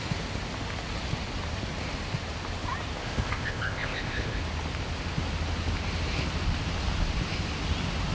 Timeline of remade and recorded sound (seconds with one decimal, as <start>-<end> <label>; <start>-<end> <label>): 0.0-3.0 recorded; 3.0-4.4 remade; 4.4-8.1 recorded